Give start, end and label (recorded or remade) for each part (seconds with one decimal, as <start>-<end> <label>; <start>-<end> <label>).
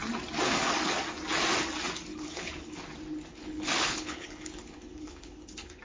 0.0-2.1 recorded; 2.1-2.8 remade; 2.8-3.3 recorded; 3.3-5.8 remade